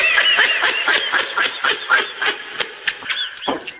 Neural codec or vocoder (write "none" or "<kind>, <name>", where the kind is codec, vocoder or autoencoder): none